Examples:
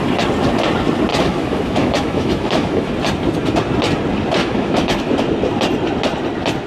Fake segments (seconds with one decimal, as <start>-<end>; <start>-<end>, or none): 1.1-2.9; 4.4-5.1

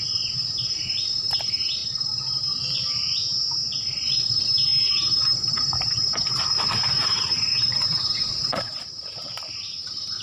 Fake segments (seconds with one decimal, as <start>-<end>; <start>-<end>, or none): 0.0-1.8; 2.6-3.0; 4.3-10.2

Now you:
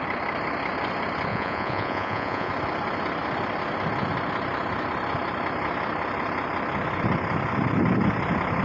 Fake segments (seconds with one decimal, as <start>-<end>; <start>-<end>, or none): 1.3-2.5

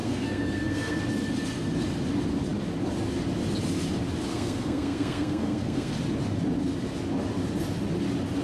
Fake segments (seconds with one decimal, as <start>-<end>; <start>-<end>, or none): 0.0-1.0; 4.3-5.9